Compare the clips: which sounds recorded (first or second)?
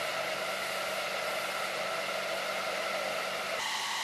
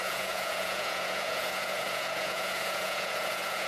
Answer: first